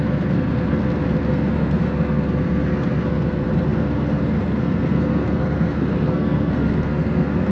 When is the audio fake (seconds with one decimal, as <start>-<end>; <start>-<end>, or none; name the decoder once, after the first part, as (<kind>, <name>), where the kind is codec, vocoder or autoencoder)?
0.0-0.8 (codec, SNAC); 1.3-7.5